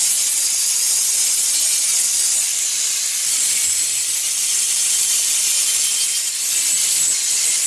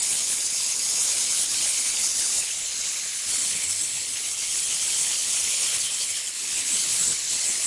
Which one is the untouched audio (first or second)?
first